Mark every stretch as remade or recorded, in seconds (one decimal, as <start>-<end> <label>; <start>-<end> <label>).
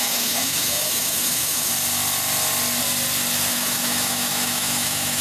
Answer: 0.0-1.7 remade; 1.7-3.5 recorded; 3.5-5.2 remade